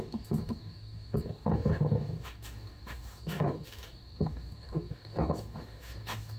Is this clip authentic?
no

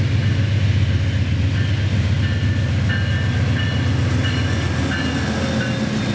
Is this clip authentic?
yes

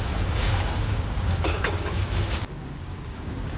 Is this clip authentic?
no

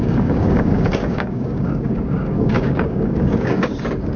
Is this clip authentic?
no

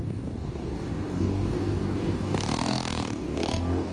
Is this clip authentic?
no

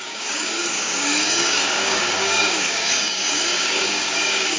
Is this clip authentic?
no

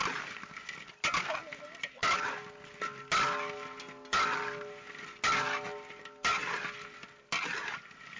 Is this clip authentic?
yes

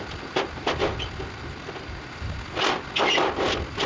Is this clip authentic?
yes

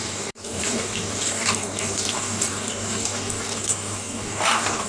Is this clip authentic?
no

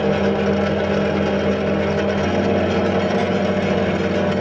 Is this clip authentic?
yes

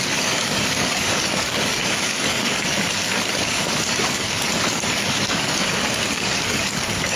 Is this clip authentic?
no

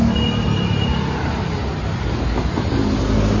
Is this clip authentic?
yes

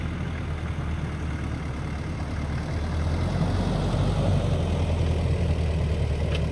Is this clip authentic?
yes